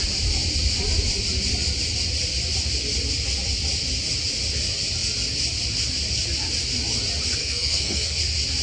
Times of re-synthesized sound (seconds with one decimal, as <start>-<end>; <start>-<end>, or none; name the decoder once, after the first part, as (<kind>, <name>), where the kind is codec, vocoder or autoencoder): 7.4-8.2 (codec, SNAC)